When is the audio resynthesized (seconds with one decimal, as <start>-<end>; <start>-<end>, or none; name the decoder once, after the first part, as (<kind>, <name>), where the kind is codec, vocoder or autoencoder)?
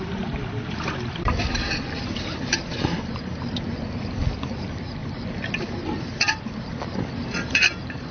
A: 0.0-3.3 (vocoder, BigVGAN v2); 4.3-5.0; 6.8-8.1